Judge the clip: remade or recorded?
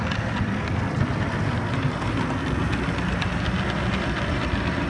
recorded